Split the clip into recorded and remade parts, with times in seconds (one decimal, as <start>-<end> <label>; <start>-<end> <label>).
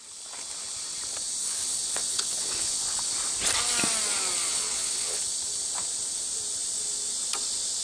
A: 0.0-1.4 recorded; 1.4-3.0 remade; 3.0-4.4 recorded; 4.4-5.3 remade; 5.3-7.8 recorded